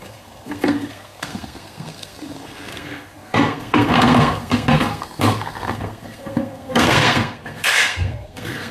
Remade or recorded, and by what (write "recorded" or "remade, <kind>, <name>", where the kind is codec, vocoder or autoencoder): remade, codec, SNAC